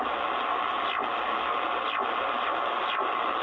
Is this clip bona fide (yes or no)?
yes